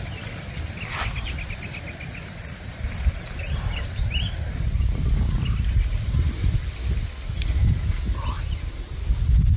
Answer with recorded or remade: recorded